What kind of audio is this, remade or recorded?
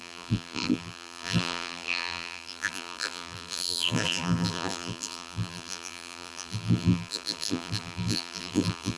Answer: remade